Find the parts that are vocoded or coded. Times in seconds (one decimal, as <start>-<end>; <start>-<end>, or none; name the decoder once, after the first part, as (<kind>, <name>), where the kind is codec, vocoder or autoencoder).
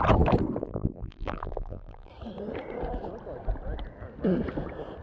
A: 0.6-2.1 (vocoder, BigVGAN v2)